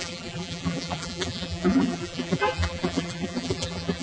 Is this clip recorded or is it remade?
remade